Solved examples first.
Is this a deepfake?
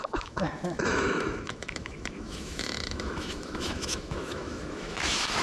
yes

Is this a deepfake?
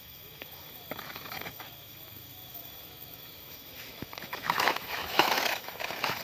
yes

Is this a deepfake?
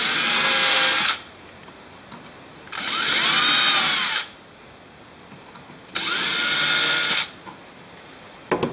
no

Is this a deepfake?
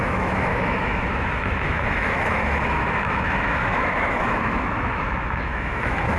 yes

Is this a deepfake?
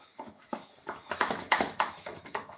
yes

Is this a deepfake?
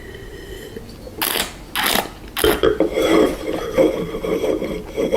no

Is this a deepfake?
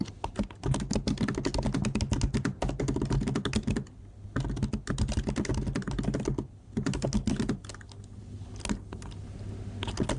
no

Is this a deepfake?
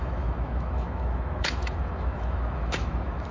yes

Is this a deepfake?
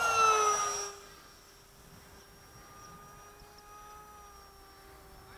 no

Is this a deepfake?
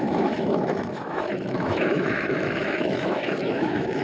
yes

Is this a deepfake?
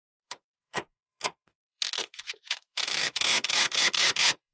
yes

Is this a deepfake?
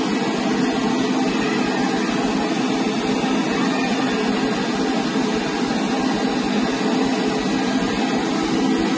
no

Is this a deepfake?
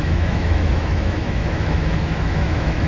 yes